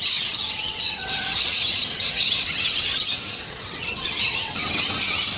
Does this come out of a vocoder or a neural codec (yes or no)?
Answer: yes